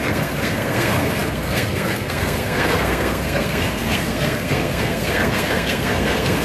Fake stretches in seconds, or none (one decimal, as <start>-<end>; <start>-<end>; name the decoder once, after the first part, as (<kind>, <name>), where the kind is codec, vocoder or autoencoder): 0.0-6.4 (codec, SNAC)